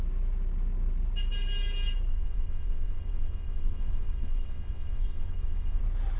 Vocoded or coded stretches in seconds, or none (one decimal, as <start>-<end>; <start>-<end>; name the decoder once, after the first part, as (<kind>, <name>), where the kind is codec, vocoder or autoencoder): 2.1-5.8 (vocoder, WaveNeXt)